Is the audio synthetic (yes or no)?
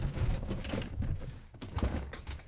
yes